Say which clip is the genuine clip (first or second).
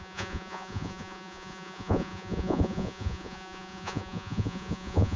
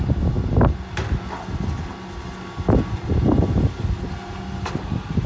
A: second